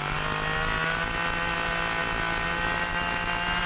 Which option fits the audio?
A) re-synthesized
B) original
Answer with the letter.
B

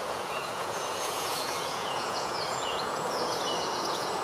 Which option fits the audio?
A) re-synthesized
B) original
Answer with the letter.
A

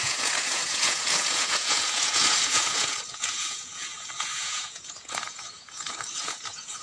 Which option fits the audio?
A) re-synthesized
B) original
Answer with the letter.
A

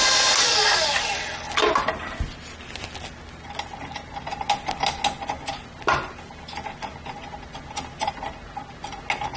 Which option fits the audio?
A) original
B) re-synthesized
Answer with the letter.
A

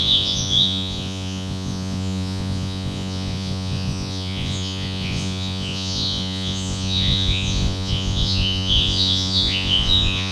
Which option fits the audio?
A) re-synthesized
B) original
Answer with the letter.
A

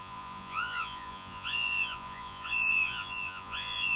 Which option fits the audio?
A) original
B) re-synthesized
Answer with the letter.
B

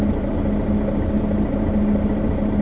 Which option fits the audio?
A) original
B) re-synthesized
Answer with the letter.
A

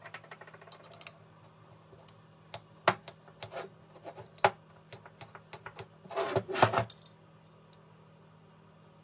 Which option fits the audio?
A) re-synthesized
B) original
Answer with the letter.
B